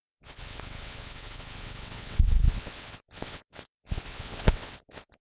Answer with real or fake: fake